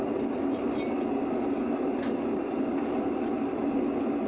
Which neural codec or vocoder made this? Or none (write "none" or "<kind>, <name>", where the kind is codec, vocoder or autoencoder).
none